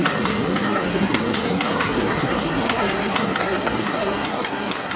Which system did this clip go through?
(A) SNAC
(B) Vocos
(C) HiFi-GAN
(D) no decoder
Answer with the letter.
A